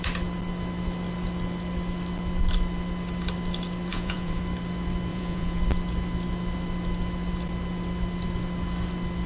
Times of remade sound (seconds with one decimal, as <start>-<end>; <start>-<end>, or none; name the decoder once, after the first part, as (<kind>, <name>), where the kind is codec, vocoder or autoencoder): 3.9-4.4 (vocoder, Vocos); 5.1-5.6